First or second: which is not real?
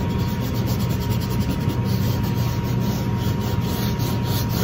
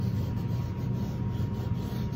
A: second